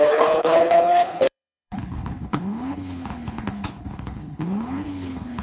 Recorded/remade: remade